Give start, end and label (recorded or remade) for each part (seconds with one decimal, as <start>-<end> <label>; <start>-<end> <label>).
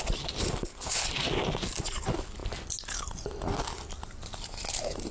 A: 0.0-5.1 recorded